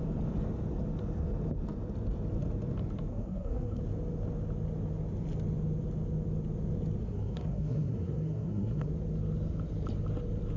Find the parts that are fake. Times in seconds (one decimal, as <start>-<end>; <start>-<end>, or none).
3.1-3.8; 7.0-8.9